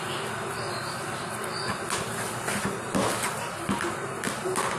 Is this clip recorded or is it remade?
recorded